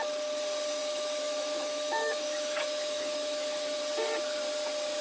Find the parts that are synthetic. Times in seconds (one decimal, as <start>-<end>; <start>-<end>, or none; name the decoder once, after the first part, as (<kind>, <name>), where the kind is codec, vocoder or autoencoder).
0.8-3.8 (autoencoder, DAC-VAE)